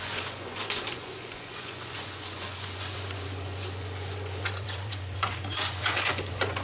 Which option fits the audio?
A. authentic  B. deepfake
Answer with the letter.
B